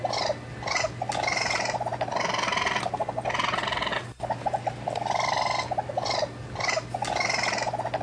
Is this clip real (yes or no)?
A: yes